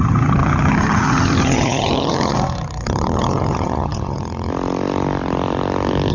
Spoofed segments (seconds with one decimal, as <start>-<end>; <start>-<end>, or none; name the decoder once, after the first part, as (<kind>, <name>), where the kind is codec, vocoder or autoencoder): 0.0-4.5 (vocoder, HiFi-GAN)